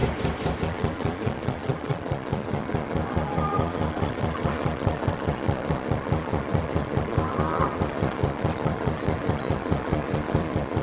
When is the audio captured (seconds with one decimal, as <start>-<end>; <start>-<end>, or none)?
0.0-0.6